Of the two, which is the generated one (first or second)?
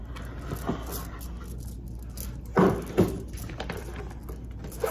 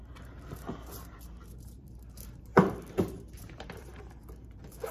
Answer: second